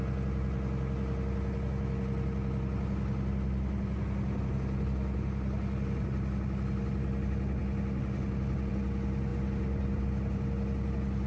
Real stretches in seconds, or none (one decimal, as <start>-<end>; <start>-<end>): 0.0-9.3; 10.0-11.3